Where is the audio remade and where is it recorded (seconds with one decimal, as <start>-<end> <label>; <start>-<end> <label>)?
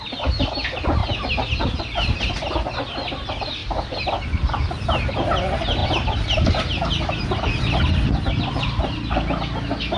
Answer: 0.0-10.0 recorded